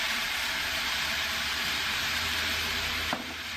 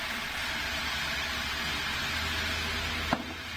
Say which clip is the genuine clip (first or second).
second